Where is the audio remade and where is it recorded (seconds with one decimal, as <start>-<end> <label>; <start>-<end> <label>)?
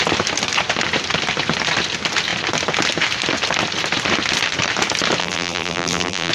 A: 0.0-5.2 recorded; 5.2-6.3 remade